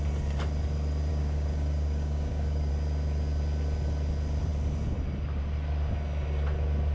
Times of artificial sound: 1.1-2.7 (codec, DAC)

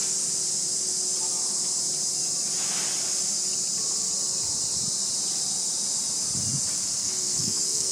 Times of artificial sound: 7.0-7.9 (codec, SNAC)

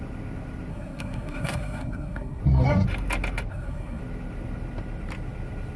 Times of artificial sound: 0.7-2.4 (codec, SNAC); 3.5-4.0

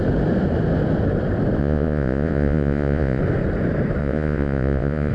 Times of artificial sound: 1.6-3.2 (vocoder, Vocos); 4.0-5.1

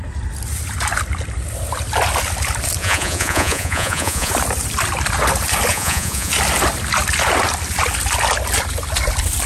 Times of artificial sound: 2.8-4.3 (vocoder, Vocos); 5.7-6.3

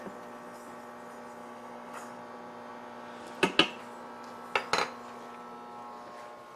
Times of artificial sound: 1.4-2.2 (codec, DAC)

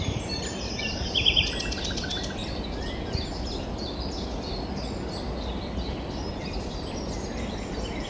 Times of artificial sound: 0.0-2.4 (vocoder, BigVGAN v2); 6.4-8.1

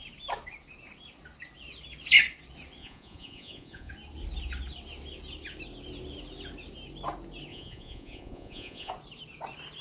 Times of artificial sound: 2.8-3.9 (vocoder, Vocos); 7.5-8.9